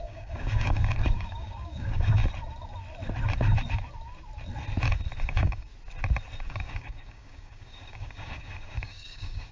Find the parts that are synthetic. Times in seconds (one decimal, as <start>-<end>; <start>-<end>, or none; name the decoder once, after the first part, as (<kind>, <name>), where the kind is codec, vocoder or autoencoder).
0.0-2.2 (codec, DAC); 5.2-5.7; 6.5-9.5